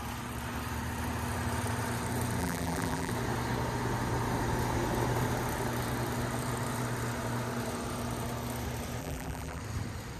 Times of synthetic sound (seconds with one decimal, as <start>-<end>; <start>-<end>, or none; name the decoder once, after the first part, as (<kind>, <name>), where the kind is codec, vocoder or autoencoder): 2.4-3.1 (vocoder, BigVGAN v2); 9.0-9.6